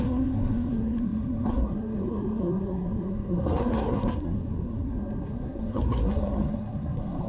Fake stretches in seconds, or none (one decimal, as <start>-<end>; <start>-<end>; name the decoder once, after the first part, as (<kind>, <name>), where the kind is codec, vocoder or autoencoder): 0.0-7.3 (codec, SNAC)